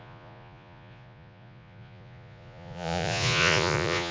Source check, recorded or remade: remade